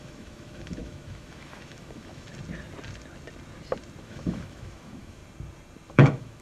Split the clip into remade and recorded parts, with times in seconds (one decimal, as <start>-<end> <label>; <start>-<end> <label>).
0.0-2.3 remade; 2.3-4.0 recorded; 4.0-5.2 remade; 5.2-5.9 recorded; 5.9-6.4 remade